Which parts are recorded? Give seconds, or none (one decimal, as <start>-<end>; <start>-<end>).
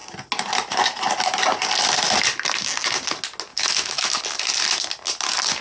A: 0.0-3.5; 4.2-5.6